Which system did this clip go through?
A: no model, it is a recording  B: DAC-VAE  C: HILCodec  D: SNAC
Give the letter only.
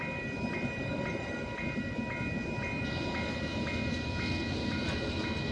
A